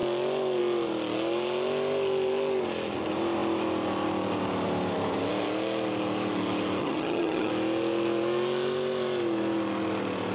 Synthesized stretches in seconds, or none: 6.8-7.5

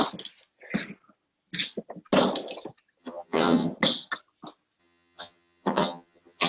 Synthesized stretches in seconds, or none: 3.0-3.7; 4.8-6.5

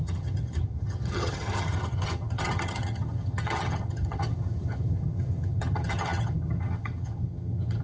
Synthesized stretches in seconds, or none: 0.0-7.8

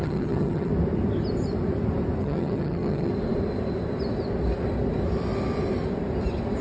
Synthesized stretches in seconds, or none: 0.0-0.7; 2.2-3.1